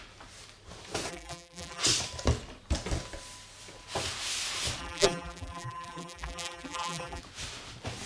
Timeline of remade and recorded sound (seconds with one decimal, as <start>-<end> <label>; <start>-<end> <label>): 0.0-1.1 recorded; 1.1-1.8 remade; 1.8-4.8 recorded; 4.8-7.2 remade; 7.2-8.1 recorded